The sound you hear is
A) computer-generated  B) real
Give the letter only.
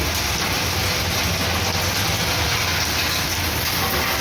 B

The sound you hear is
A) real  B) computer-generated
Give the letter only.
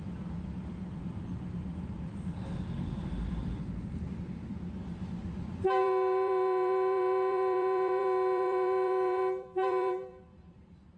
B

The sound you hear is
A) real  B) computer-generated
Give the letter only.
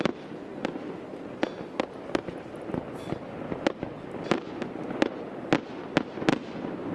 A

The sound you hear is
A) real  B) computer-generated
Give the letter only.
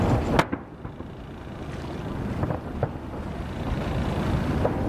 A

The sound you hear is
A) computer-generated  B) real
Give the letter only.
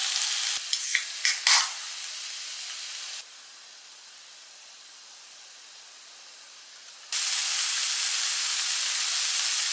B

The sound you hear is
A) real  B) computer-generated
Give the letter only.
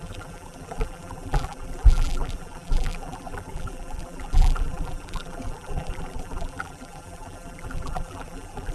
B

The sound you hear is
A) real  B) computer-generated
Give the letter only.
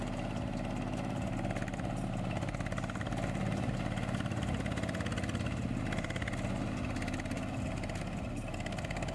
A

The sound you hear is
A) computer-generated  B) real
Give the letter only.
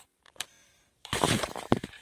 A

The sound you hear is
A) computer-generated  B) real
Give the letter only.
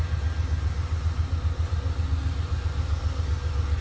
B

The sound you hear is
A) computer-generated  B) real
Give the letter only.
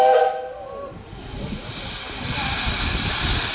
B